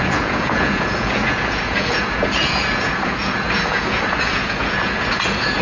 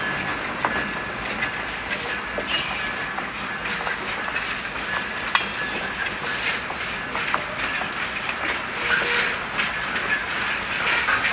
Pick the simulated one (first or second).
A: first